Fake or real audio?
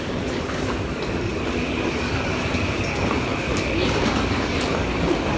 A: fake